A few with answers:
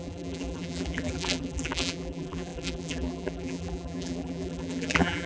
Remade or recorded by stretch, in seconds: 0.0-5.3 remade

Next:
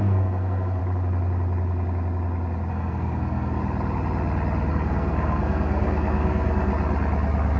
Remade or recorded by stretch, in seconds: 0.0-0.8 remade; 0.8-2.7 recorded; 2.7-3.6 remade; 3.6-4.7 recorded; 4.7-6.7 remade; 6.7-7.6 recorded

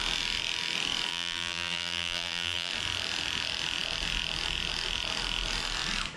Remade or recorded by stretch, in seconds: 0.0-1.1 recorded; 1.1-2.7 remade; 2.7-6.2 recorded